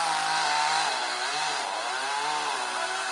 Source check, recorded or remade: recorded